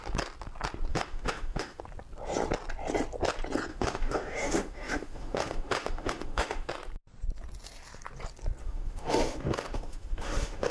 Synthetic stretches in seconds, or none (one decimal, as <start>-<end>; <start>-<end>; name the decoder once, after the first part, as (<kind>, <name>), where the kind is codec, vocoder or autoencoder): 0.9-1.8 (autoencoder, DAC-VAE); 3.7-6.7; 8.6-10.7